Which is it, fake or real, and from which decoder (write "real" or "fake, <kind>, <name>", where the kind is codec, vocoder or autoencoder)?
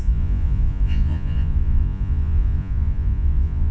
fake, vocoder, Vocos